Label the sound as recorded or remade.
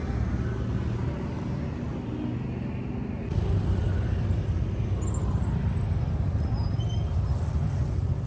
recorded